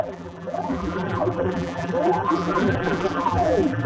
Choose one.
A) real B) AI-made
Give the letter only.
B